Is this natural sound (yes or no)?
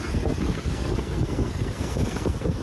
no